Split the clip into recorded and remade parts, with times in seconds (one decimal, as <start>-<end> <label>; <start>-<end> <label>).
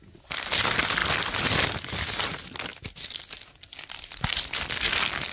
0.0-5.3 recorded